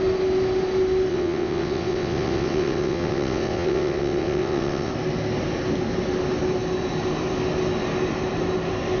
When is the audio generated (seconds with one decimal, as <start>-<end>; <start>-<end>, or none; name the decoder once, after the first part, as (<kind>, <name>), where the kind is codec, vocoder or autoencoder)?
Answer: 1.1-4.9 (vocoder, WaveNeXt)